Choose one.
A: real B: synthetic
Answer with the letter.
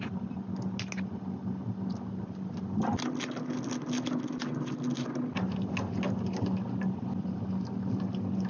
A